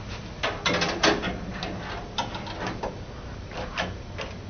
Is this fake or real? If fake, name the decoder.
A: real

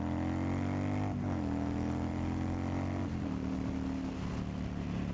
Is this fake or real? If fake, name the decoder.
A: real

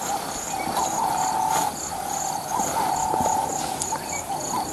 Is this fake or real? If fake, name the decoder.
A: real